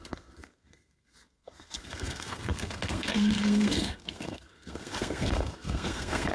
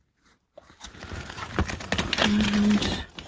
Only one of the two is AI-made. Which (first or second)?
first